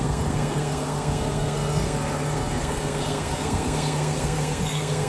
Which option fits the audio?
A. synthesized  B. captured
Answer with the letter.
A